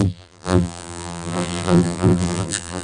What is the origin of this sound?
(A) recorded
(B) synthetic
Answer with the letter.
B